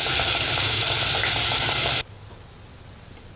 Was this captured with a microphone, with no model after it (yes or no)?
yes